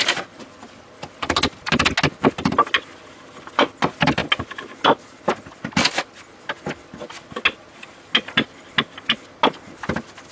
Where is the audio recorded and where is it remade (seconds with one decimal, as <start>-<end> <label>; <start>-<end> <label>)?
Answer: 0.0-10.3 recorded